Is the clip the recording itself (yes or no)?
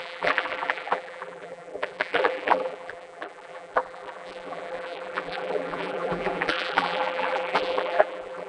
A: no